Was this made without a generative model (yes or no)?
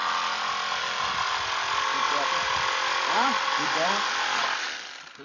yes